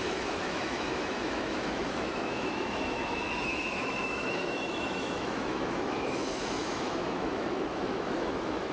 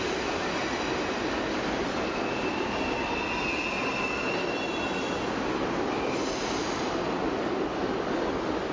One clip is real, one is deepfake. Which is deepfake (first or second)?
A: first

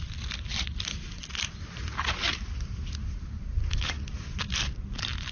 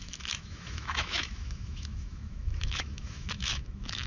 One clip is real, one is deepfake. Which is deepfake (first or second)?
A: second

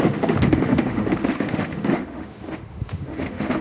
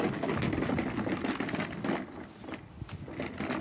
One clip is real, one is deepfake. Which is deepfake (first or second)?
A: first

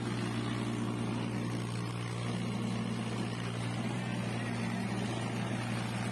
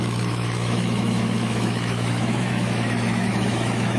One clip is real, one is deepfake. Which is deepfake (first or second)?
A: second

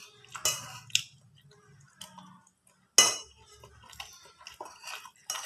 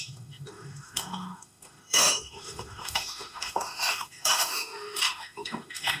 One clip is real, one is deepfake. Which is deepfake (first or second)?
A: second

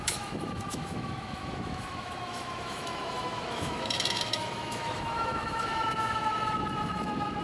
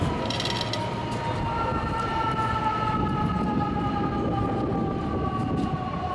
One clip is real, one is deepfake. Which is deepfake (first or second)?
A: first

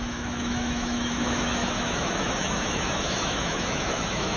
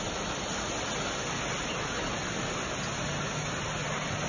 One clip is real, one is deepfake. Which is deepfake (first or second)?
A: first